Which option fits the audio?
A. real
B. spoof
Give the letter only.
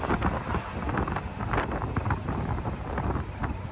A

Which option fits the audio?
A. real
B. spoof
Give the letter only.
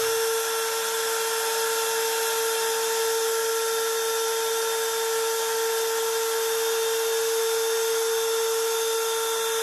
A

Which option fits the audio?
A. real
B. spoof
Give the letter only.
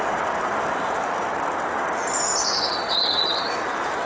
A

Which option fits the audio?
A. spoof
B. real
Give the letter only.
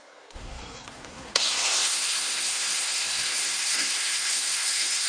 A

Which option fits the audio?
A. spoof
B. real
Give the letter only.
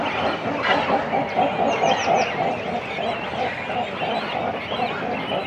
B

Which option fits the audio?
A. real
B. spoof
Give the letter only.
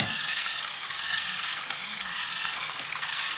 B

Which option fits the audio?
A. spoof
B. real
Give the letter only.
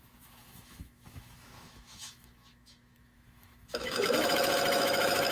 A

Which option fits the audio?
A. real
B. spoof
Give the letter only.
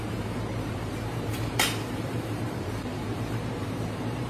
B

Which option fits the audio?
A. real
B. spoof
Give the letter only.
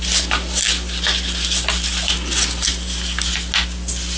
A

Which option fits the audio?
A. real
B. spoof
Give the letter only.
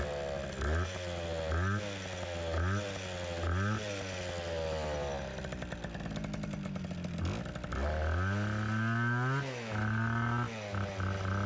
A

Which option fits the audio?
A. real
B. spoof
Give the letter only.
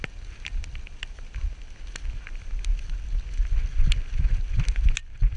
A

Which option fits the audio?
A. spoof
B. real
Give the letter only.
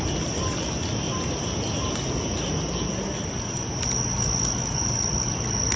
B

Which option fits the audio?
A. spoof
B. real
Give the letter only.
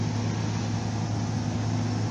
B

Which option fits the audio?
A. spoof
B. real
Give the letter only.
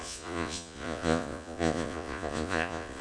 A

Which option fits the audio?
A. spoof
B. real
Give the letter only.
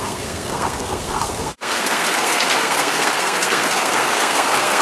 A